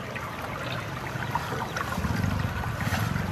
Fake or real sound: real